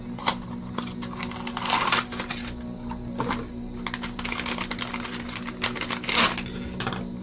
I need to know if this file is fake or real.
real